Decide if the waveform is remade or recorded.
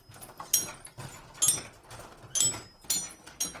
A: recorded